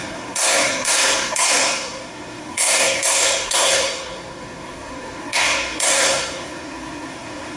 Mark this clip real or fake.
fake